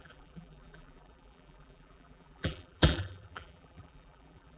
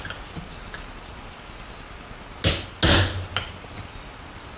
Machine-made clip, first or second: first